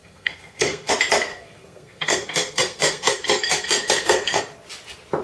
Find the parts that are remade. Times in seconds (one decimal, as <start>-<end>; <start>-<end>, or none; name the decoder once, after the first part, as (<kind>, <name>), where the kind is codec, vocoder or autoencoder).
0.0-0.9 (codec, SNAC); 1.3-4.4